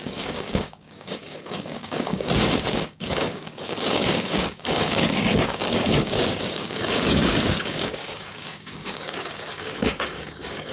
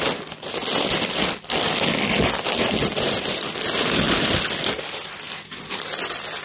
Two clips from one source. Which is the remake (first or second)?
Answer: first